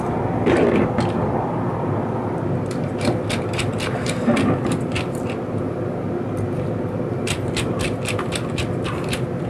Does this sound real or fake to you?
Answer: real